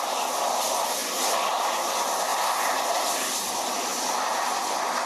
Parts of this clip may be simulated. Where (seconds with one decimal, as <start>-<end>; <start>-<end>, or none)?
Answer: none